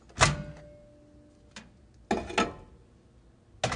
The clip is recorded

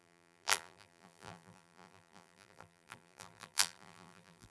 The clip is remade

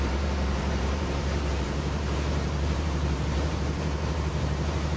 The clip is remade